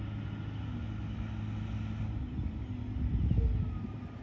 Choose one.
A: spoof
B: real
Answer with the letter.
B